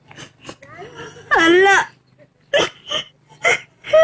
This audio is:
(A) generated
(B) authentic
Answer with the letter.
B